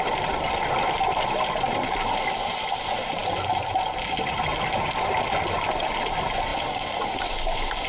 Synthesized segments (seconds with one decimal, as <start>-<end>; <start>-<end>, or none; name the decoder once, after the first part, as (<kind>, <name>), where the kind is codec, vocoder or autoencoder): none